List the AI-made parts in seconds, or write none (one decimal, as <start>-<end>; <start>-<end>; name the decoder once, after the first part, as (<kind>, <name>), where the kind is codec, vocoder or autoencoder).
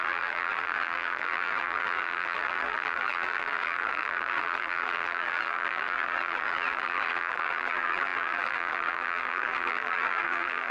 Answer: 0.0-10.7 (vocoder, BigVGAN v2)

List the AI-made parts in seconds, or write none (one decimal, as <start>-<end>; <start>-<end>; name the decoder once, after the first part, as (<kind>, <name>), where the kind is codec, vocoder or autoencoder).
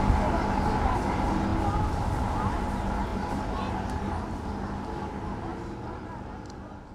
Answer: none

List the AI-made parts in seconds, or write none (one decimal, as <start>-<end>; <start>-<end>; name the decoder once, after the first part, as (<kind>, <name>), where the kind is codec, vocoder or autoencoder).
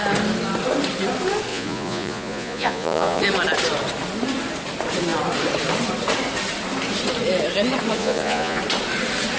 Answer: 1.5-3.2 (vocoder, Vocos); 8.0-8.6